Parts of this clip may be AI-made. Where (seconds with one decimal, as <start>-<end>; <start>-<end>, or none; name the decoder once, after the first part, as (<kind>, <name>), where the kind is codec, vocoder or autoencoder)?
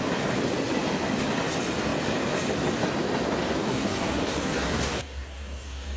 3.6-6.0 (codec, DAC)